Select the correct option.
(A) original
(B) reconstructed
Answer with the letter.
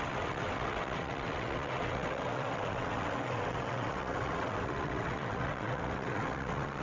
B